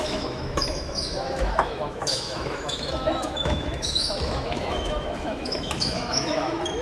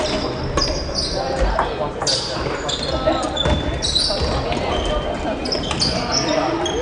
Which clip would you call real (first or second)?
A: second